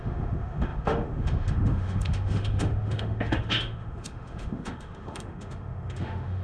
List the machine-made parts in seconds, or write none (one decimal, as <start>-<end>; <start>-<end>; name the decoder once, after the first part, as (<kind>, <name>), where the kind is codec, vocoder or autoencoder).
0.0-6.4 (autoencoder, DAC-VAE)